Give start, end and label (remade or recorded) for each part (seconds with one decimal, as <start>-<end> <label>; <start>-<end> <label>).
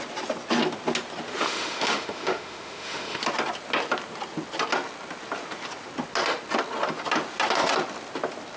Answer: 0.0-1.4 recorded; 1.4-3.2 remade; 3.2-8.6 recorded